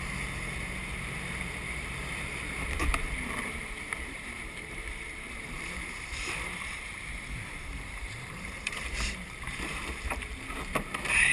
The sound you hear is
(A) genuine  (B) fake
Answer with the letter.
B